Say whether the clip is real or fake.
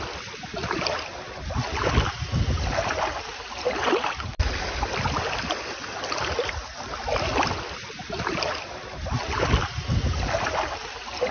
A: real